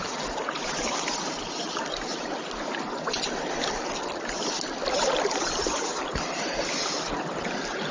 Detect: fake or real real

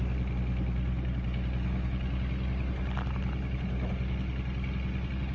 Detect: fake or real real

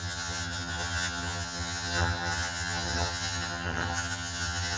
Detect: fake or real fake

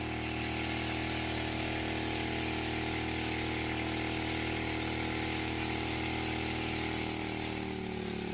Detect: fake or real real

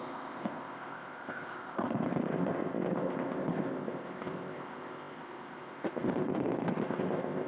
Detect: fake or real fake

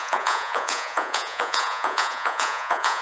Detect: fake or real fake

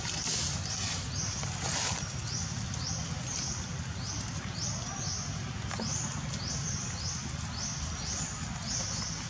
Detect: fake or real real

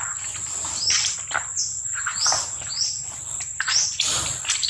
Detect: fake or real real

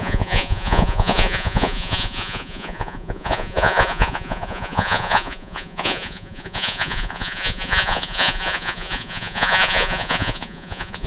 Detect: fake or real fake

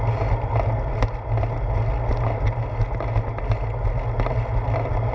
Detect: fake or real real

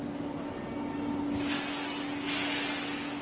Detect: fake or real real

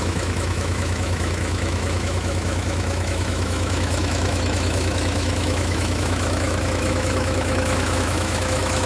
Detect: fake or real fake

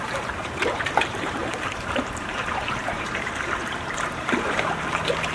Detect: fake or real fake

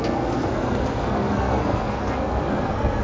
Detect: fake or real fake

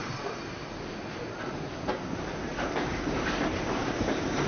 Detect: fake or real fake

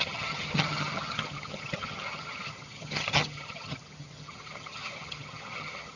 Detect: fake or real fake